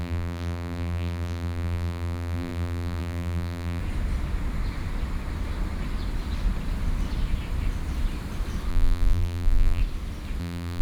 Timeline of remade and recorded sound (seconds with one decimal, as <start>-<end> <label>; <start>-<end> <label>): 0.0-3.8 remade; 3.8-8.7 recorded; 8.7-9.8 remade; 9.8-10.4 recorded; 10.4-10.8 remade